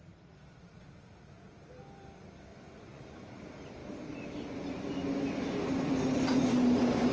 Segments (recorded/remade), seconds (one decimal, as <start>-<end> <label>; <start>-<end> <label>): 0.0-2.5 recorded; 2.5-3.3 remade; 3.3-7.1 recorded

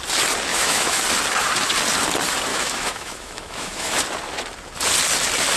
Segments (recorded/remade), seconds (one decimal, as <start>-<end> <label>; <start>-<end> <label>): 0.0-0.5 recorded; 0.5-1.0 remade; 1.0-2.5 recorded; 2.5-3.9 remade; 3.9-5.6 recorded

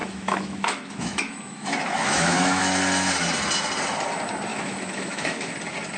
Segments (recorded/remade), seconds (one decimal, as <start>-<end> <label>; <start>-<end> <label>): 0.0-2.6 remade; 2.6-4.5 recorded; 4.5-5.5 remade; 5.5-6.0 recorded